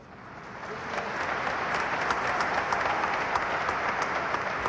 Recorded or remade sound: recorded